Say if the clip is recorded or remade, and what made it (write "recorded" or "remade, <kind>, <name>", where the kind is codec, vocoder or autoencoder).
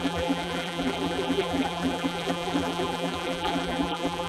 remade, vocoder, BigVGAN v2